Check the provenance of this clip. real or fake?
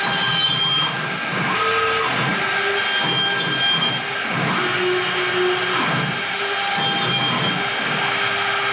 real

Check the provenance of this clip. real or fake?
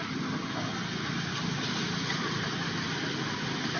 real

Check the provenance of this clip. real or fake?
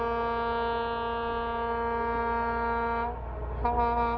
real